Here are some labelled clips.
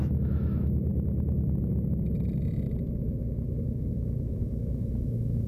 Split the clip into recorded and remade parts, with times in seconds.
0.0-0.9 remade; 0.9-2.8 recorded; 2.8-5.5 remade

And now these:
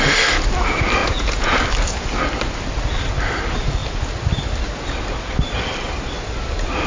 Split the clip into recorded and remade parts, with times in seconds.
0.0-1.0 recorded; 1.0-1.6 remade; 1.6-6.9 recorded

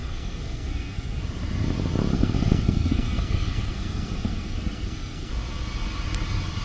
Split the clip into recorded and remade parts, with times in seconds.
0.0-1.2 remade; 1.2-2.1 recorded; 2.1-5.3 remade; 5.3-6.6 recorded

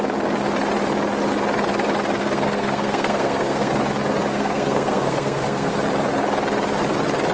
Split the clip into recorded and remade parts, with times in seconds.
0.0-2.2 recorded; 2.2-3.7 remade; 3.7-4.3 recorded; 4.3-5.7 remade; 5.7-7.3 recorded

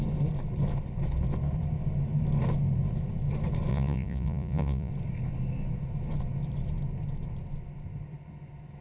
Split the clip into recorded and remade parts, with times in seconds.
0.0-3.7 recorded; 3.7-4.9 remade; 4.9-8.8 recorded

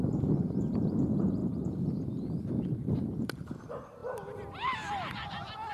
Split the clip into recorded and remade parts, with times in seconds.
0.0-1.4 recorded; 1.4-3.5 remade; 3.5-4.0 recorded; 4.0-4.9 remade; 4.9-5.7 recorded

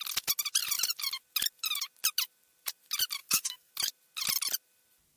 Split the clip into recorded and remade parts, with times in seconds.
0.0-3.2 recorded; 3.2-3.7 remade; 3.7-5.2 recorded

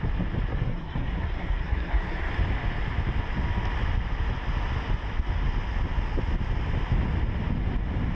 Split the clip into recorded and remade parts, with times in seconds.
0.0-0.5 recorded; 0.5-2.3 remade; 2.3-8.1 recorded